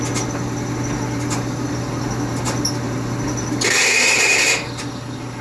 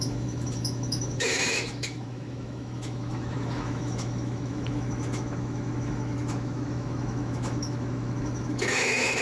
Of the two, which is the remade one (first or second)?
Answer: second